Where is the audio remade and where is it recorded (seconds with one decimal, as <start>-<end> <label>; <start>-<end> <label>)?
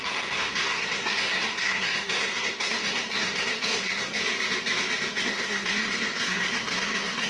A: 0.0-4.2 remade; 4.2-5.2 recorded; 5.2-7.3 remade